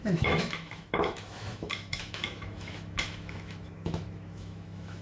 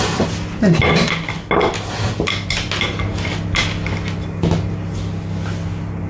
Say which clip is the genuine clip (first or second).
second